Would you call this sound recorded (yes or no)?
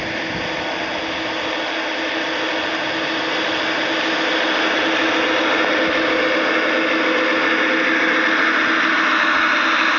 yes